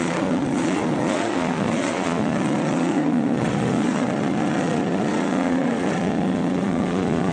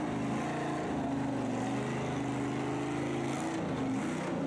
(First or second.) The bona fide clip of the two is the second